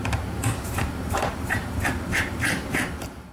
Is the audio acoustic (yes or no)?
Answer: no